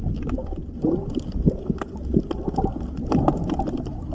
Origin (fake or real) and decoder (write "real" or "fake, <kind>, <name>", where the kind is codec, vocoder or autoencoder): real